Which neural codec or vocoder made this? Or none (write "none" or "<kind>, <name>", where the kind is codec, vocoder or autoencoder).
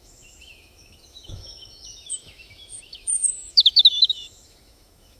autoencoder, DAC-VAE